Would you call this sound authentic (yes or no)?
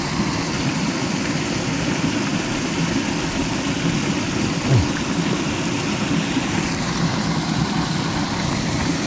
yes